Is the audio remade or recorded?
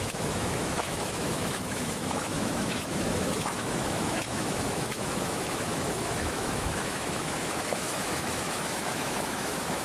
remade